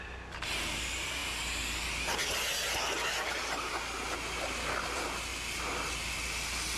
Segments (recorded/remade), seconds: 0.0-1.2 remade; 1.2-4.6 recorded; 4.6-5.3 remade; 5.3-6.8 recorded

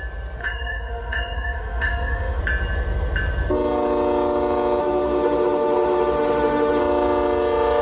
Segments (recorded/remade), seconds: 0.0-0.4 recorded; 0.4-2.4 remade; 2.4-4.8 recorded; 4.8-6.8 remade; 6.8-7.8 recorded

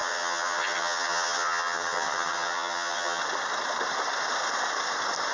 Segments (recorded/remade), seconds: 0.0-3.2 remade; 3.2-5.3 recorded